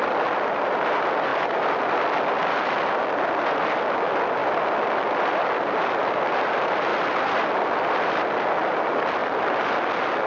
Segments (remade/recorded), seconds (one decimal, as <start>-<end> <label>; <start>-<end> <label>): 0.0-10.3 remade